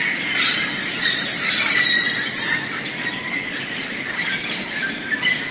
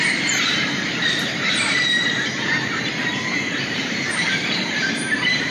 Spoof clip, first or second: second